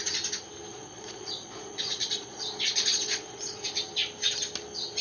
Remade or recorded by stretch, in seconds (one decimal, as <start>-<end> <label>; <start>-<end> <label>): 0.0-0.7 recorded; 0.7-3.7 remade; 3.7-5.0 recorded